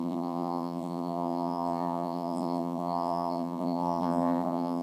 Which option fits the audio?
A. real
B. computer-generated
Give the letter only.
B